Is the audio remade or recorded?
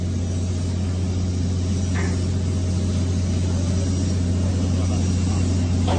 recorded